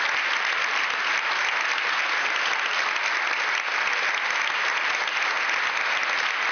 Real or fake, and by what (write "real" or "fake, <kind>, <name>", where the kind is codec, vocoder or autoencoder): real